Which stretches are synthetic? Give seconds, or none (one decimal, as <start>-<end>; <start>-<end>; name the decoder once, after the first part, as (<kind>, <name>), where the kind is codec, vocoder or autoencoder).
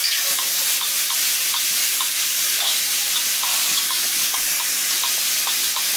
0.0-0.6 (codec, DAC); 1.8-2.9; 3.5-4.6